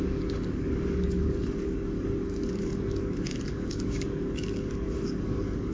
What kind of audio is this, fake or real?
fake